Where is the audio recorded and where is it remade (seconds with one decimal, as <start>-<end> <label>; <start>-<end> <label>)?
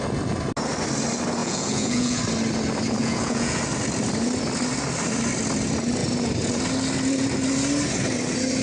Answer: 0.0-1.4 recorded; 1.4-2.2 remade; 2.2-3.0 recorded; 3.0-3.6 remade; 3.6-8.6 recorded